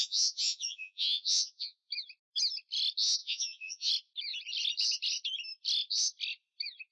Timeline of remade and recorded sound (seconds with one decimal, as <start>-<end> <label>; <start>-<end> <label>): 0.0-1.9 remade; 1.9-3.2 recorded; 3.2-3.9 remade; 3.9-6.9 recorded